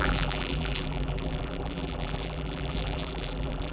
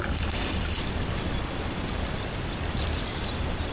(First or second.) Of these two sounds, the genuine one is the second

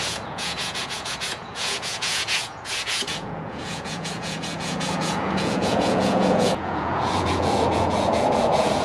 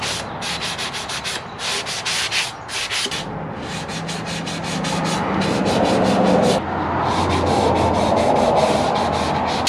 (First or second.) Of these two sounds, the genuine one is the second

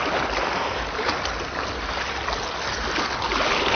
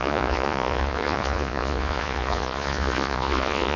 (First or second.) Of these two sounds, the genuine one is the first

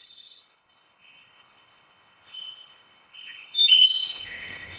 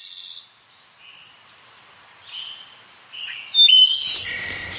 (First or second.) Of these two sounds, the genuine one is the second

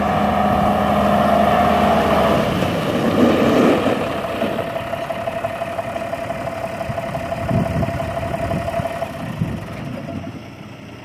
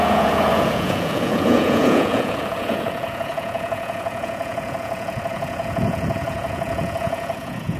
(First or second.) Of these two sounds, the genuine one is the first